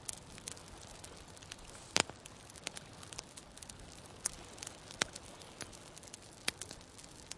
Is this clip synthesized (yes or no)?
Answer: no